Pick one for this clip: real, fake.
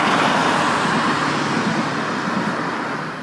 real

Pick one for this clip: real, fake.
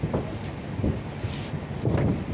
real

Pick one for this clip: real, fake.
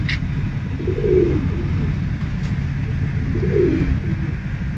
real